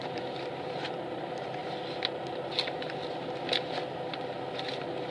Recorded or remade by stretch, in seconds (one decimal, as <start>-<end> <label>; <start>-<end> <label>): 0.0-1.6 remade; 1.6-5.1 recorded